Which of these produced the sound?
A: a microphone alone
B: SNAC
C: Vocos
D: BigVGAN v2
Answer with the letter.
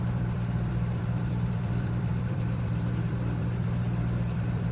D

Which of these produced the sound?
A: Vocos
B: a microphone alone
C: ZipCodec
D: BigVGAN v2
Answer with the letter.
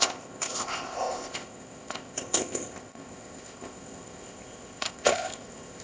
C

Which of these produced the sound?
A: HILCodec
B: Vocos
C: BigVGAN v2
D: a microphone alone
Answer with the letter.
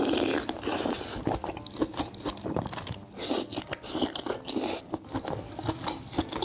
D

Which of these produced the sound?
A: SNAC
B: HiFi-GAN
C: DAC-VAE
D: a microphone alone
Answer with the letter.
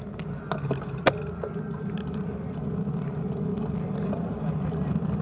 D